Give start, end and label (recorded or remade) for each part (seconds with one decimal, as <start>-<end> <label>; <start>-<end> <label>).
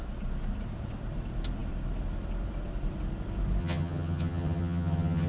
0.0-3.6 recorded; 3.6-5.3 remade